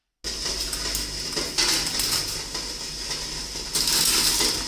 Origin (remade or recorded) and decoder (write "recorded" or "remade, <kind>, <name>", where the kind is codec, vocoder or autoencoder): recorded